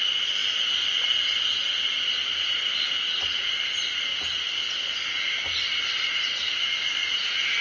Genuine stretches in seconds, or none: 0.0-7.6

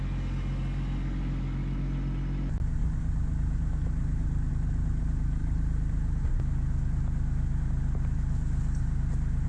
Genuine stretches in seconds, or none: 0.0-2.8; 4.5-5.4; 6.2-9.5